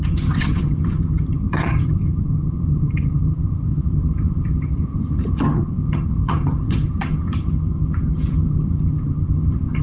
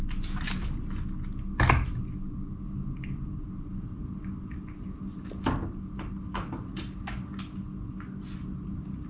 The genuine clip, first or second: second